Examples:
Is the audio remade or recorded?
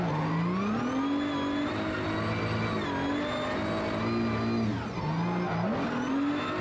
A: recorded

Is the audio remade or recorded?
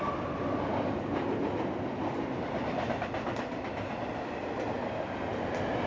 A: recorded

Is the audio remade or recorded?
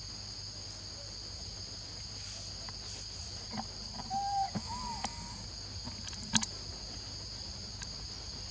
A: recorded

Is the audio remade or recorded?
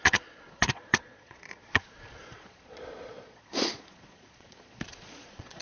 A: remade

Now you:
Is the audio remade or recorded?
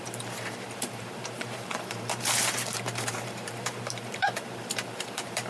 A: remade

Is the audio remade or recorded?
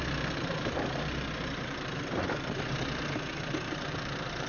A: remade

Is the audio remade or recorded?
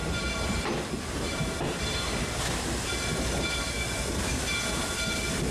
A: recorded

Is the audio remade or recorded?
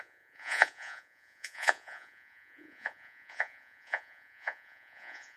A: remade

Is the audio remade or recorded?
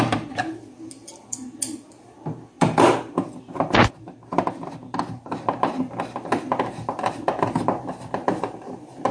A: recorded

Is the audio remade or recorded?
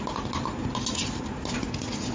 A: recorded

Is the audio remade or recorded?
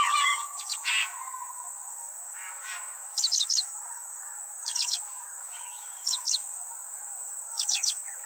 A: remade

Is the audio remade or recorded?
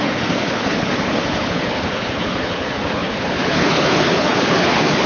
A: remade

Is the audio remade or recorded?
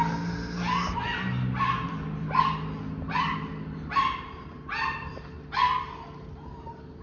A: recorded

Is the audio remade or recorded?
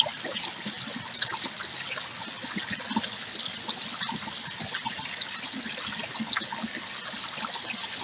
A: recorded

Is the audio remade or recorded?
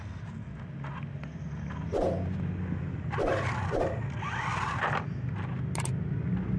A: recorded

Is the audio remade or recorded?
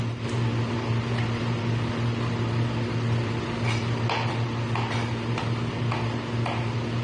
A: recorded